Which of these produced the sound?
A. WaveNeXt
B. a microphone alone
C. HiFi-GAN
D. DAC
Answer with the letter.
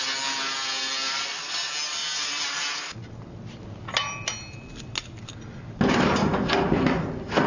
B